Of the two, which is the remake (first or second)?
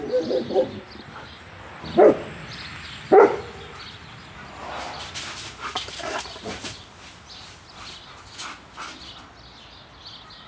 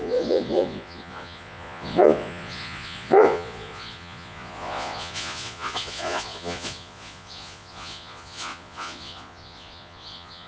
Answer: second